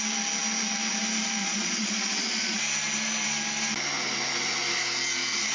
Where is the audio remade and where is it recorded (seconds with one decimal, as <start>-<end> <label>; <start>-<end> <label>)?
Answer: 0.0-1.4 recorded; 1.4-2.6 remade; 2.6-5.5 recorded